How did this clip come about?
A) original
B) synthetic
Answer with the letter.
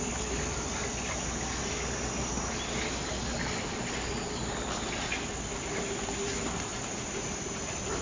A